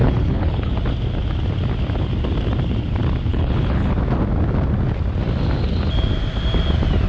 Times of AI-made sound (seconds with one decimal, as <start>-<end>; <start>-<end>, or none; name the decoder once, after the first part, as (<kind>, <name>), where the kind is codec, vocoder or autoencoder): 0.0-0.7 (codec, HILCodec); 3.3-3.9